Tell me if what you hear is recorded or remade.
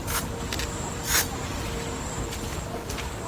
recorded